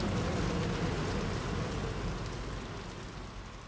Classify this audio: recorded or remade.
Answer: recorded